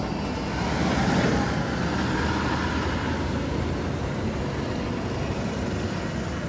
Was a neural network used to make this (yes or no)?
no